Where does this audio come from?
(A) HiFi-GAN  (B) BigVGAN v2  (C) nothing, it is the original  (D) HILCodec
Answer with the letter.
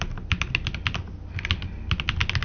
C